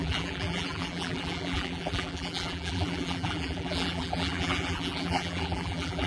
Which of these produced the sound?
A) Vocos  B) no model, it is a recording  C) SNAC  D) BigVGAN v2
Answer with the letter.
D